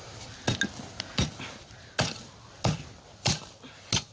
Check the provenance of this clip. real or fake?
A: real